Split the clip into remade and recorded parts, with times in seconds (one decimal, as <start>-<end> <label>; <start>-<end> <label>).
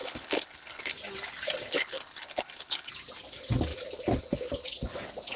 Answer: 0.0-0.9 remade; 0.9-1.7 recorded; 1.7-2.9 remade; 2.9-5.4 recorded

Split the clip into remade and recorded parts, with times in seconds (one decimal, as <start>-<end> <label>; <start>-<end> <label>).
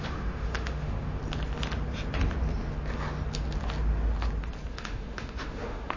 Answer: 0.0-1.2 remade; 1.2-4.7 recorded; 4.7-6.0 remade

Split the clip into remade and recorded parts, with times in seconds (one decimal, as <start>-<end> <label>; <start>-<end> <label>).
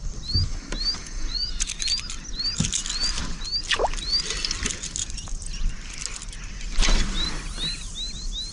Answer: 0.0-1.0 recorded; 1.0-1.7 remade; 1.7-8.5 recorded